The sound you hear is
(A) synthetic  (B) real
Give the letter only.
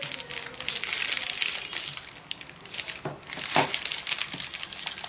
B